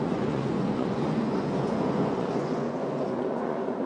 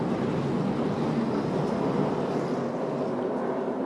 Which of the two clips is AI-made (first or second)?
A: first